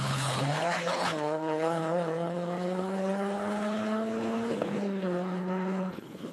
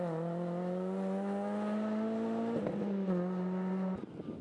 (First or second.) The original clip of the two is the second